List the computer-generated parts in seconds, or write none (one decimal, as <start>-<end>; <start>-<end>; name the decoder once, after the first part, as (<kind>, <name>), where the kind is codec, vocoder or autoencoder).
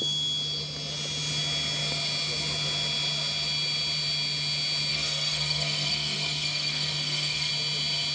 4.9-7.5 (codec, SNAC)